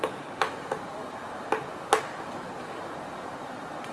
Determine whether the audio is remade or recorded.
recorded